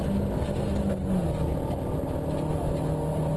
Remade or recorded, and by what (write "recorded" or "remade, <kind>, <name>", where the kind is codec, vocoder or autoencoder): recorded